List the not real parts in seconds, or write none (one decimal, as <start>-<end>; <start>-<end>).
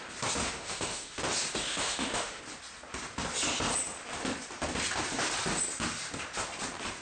0.4-1.2; 1.7-2.4